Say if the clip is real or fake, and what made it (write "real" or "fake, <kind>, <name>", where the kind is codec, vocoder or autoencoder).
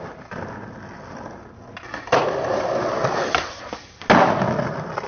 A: real